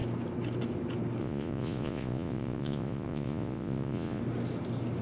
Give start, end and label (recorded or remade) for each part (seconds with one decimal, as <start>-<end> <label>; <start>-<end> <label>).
0.0-1.2 recorded; 1.2-4.2 remade; 4.2-5.0 recorded